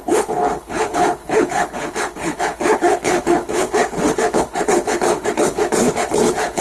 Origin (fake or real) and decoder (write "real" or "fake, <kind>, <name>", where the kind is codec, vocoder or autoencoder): fake, codec, HILCodec